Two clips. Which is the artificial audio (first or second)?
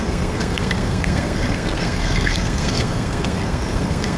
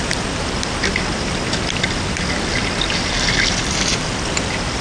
first